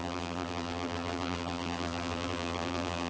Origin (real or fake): fake